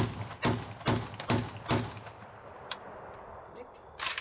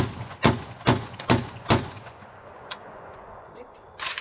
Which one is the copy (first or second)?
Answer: second